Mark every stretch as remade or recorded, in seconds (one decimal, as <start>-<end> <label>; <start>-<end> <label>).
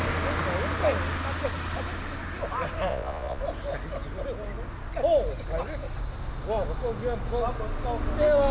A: 0.0-2.9 recorded; 2.9-3.4 remade; 3.4-8.5 recorded